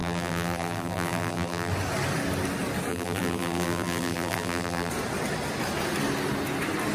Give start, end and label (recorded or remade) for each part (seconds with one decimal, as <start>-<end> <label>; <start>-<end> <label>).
0.0-1.7 remade; 1.7-2.9 recorded; 2.9-4.9 remade; 4.9-6.9 recorded